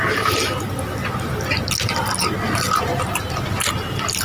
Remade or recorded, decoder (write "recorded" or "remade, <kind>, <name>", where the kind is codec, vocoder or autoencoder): recorded